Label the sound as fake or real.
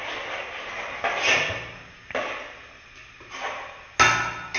real